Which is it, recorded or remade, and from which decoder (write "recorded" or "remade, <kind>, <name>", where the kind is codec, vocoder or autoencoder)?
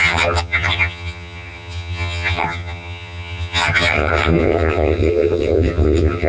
remade, vocoder, HiFi-GAN